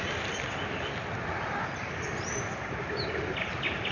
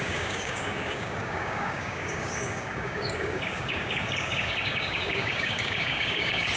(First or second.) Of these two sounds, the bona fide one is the first